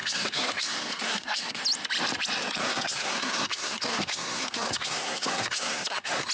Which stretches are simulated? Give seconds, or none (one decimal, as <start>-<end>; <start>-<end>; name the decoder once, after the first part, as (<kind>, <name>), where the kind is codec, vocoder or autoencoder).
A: 0.0-1.6 (codec, SNAC); 2.6-6.3